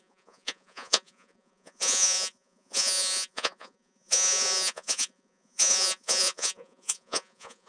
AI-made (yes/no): yes